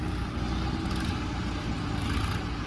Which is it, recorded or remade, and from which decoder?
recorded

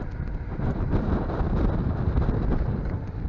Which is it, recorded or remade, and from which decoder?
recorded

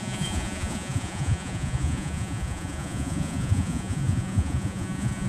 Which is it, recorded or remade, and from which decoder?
remade, vocoder, Vocos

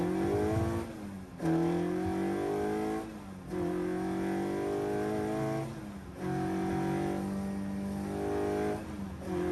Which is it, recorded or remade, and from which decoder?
recorded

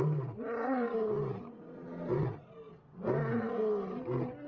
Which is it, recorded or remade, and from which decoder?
recorded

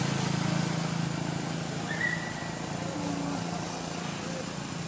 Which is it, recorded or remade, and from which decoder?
recorded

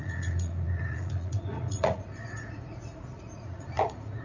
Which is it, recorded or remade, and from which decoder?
remade, vocoder, Vocos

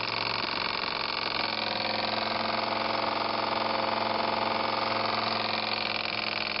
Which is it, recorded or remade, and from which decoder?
recorded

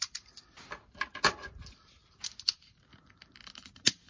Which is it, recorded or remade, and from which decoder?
recorded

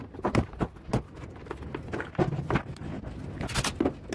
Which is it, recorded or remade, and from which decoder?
recorded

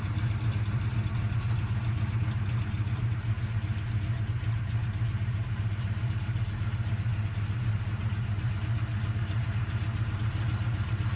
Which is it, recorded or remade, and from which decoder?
recorded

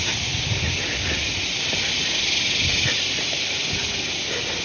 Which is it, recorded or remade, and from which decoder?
recorded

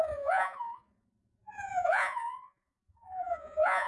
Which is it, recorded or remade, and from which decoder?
remade, vocoder, Vocos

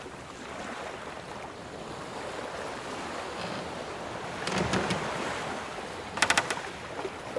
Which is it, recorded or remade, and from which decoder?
recorded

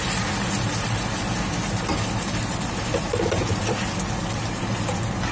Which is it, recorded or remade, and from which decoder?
recorded